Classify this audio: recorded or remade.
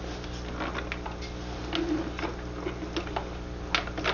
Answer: recorded